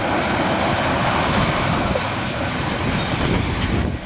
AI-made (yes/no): no